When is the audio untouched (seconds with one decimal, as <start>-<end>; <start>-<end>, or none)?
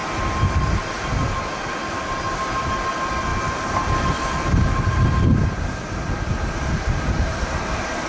0.0-3.3